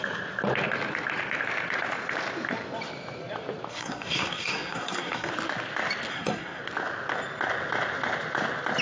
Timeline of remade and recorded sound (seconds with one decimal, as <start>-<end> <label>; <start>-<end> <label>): 0.0-3.7 recorded; 3.7-5.3 remade; 5.3-6.1 recorded; 6.1-6.6 remade; 6.6-8.8 recorded